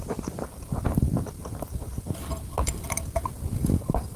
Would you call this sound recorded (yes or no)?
yes